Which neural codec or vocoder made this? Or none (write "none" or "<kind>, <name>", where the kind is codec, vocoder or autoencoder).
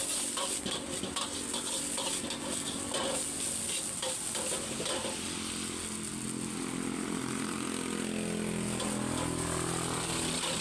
none